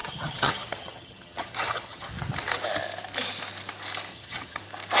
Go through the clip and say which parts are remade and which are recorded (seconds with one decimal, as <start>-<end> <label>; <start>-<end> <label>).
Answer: 0.0-2.1 remade; 2.1-4.1 recorded; 4.1-4.6 remade; 4.6-5.0 recorded